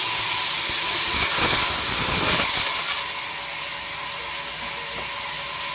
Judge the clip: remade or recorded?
recorded